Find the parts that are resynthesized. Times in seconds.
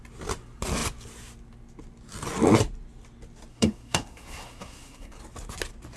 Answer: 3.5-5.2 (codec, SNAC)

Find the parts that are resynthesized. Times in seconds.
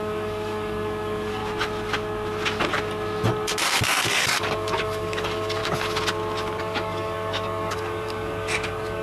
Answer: 0.0-1.4 (codec, DAC); 4.1-5.6; 6.6-9.0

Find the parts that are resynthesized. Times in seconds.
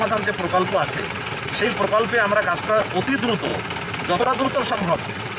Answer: 0.0-1.7 (vocoder, WaveNeXt); 2.5-3.5; 4.2-5.4